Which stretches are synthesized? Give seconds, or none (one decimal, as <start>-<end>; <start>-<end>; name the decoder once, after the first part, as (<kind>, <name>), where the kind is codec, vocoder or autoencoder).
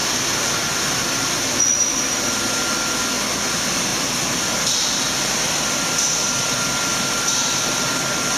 3.9-4.4 (vocoder, BigVGAN v2); 6.9-7.6